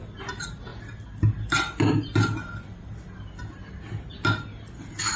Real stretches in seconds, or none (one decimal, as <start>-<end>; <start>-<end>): 0.0-5.2